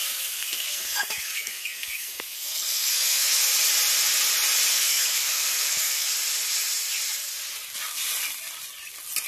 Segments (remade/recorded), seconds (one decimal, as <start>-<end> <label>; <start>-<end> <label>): 0.0-3.4 remade; 3.4-4.7 recorded; 4.7-6.1 remade; 6.1-9.3 recorded